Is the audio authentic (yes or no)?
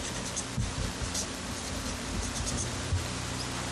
yes